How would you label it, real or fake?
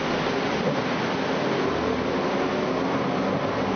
real